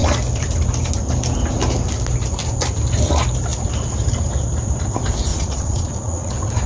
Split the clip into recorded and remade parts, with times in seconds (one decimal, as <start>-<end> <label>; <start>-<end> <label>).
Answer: 0.0-5.3 recorded; 5.3-6.7 remade